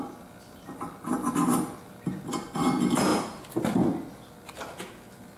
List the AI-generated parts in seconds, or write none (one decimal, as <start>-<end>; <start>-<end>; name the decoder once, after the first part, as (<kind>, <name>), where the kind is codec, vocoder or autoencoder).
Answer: none